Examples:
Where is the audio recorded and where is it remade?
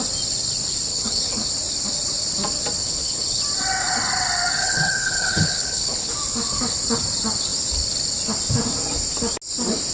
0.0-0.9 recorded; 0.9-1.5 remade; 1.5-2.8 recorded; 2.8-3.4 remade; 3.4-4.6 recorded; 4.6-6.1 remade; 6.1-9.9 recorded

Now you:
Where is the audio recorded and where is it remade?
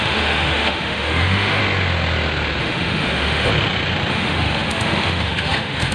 0.0-1.6 remade; 1.6-2.6 recorded; 2.6-3.5 remade; 3.5-4.1 recorded; 4.1-5.9 remade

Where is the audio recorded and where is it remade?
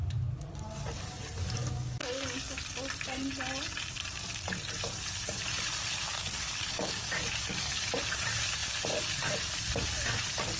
0.0-1.4 recorded; 1.4-2.6 remade; 2.6-6.1 recorded; 6.1-7.8 remade; 7.8-10.6 recorded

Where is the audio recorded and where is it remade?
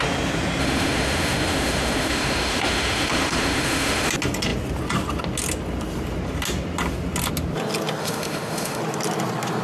0.0-0.6 recorded; 0.6-4.1 remade; 4.1-8.0 recorded; 8.0-8.8 remade; 8.8-9.6 recorded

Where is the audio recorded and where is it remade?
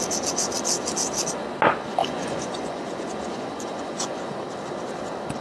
0.0-2.0 recorded; 2.0-4.4 remade; 4.4-5.4 recorded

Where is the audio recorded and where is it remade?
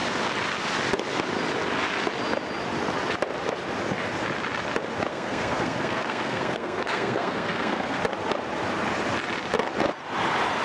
0.0-5.1 recorded; 5.1-8.0 remade; 8.0-10.6 recorded